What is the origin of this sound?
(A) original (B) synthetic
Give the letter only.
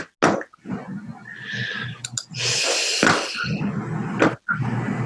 A